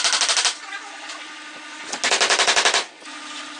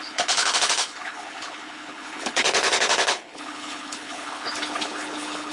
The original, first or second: first